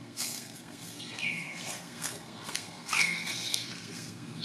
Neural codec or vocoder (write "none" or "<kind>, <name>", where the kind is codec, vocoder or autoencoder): codec, SNAC